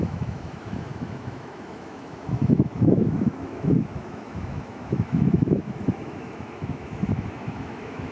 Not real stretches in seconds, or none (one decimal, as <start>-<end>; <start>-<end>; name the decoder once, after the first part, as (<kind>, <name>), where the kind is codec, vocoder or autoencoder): 0.0-8.1 (autoencoder, DAC-VAE)